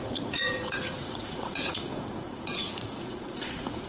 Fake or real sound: fake